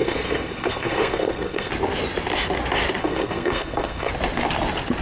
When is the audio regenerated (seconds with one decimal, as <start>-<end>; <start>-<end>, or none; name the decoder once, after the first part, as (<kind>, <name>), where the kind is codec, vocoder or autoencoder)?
0.0-1.7 (codec, SNAC); 3.0-4.1